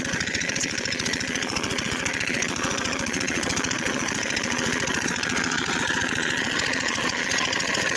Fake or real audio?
fake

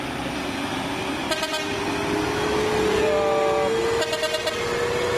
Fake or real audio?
real